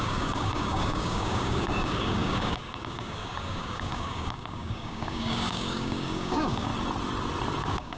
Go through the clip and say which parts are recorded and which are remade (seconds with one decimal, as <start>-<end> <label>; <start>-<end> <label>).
0.0-6.7 remade; 6.7-7.6 recorded; 7.6-8.0 remade